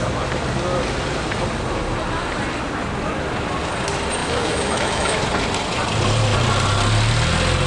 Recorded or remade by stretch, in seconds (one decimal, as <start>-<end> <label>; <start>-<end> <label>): 0.0-4.2 recorded; 4.2-5.2 remade; 5.2-7.7 recorded